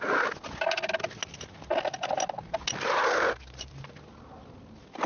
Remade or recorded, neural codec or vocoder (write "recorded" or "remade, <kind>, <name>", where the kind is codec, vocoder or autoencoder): recorded